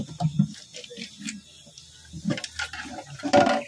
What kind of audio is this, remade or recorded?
recorded